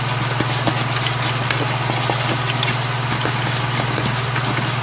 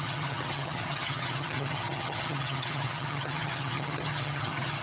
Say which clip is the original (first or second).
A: first